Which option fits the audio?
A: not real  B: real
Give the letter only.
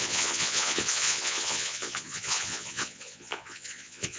A